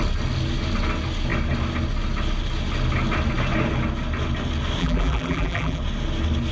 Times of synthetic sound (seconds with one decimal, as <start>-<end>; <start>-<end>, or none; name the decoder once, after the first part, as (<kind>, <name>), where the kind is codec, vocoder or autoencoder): 4.8-5.8 (vocoder, BigVGAN v2)